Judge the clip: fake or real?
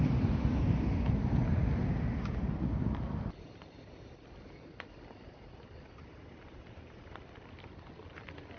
real